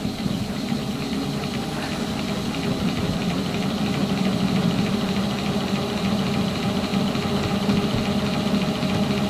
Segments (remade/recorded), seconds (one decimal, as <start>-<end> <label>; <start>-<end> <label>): 0.0-9.3 recorded